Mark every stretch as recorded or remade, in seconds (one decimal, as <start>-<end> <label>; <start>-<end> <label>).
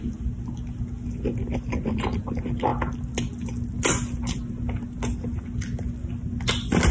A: 0.0-6.9 recorded